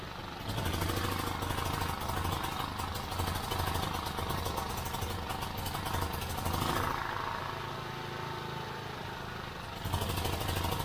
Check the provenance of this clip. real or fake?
real